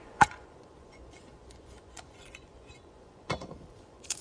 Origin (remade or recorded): remade